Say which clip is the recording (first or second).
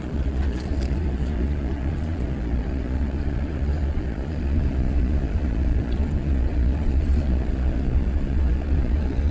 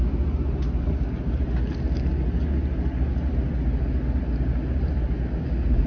second